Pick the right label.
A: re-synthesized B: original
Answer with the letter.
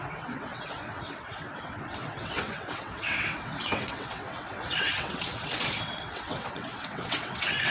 A